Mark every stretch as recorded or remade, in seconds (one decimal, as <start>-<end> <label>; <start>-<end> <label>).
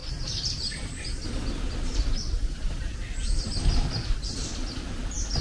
0.0-5.4 remade